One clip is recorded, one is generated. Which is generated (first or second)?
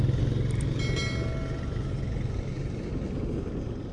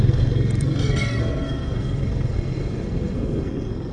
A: second